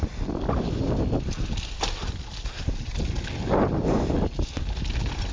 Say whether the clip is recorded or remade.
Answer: recorded